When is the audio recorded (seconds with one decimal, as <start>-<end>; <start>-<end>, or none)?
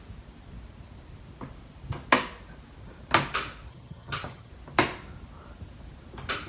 0.0-3.7; 4.5-6.5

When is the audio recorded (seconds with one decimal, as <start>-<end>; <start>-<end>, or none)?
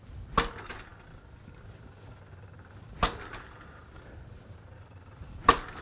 0.0-5.8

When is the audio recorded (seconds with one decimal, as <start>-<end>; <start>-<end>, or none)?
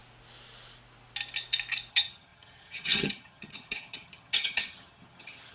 0.0-1.9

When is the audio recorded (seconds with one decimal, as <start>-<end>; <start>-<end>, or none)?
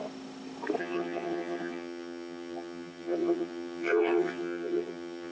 0.0-0.8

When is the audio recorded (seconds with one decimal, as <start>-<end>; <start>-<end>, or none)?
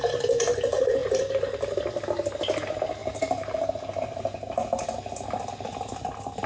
0.0-6.5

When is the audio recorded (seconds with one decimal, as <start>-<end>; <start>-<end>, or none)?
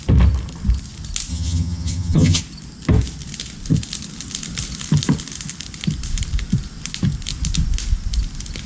0.0-1.3; 2.4-8.7